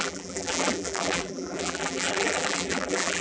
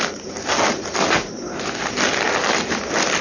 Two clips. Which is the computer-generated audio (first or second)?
first